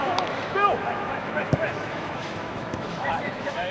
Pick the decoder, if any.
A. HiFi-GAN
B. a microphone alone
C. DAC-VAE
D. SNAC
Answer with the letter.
C